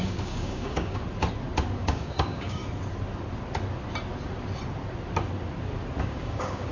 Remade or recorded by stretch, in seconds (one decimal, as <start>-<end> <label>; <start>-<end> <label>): 0.0-1.0 remade; 1.0-1.8 recorded; 1.8-2.6 remade; 2.6-6.0 recorded; 6.0-6.7 remade